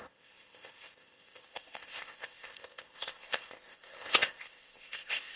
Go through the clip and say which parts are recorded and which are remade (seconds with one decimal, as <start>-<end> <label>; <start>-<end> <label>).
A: 0.0-5.4 remade